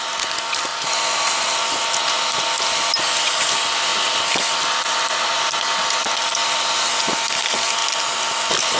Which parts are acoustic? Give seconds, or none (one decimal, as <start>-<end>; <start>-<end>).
0.0-8.8